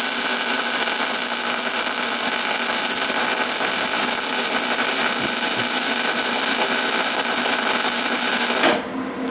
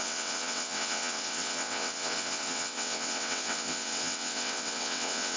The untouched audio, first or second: first